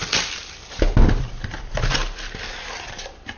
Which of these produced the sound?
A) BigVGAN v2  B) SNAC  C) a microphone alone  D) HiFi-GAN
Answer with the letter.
C